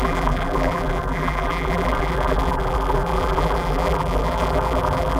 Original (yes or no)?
no